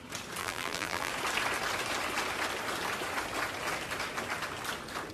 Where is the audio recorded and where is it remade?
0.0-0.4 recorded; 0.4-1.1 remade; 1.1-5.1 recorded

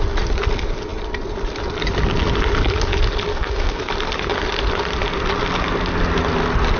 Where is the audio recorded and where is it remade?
0.0-3.3 recorded; 3.3-3.9 remade; 3.9-6.8 recorded

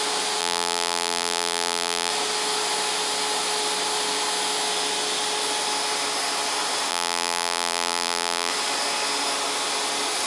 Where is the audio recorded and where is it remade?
0.0-0.4 recorded; 0.4-2.1 remade; 2.1-6.9 recorded; 6.9-8.5 remade; 8.5-10.3 recorded

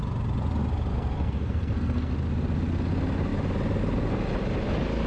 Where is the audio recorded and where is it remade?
0.0-0.9 recorded; 0.9-2.1 remade; 2.1-5.1 recorded